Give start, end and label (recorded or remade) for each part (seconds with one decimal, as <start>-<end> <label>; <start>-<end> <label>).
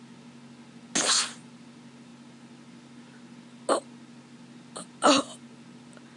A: 0.0-6.2 recorded